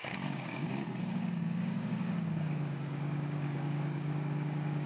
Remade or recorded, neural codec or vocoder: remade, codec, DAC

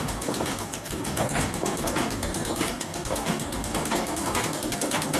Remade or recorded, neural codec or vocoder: remade, codec, DAC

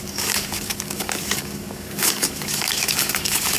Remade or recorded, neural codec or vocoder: remade, codec, DAC